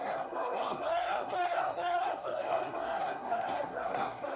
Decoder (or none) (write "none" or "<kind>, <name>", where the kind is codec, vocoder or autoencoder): codec, SNAC